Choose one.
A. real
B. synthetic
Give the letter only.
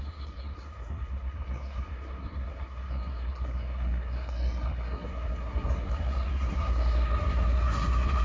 B